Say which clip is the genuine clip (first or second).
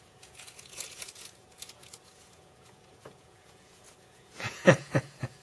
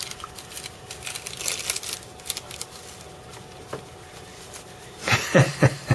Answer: second